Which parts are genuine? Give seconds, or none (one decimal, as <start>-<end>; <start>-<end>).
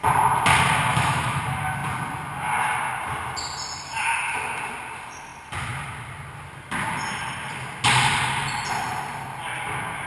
0.0-0.9; 1.4-10.1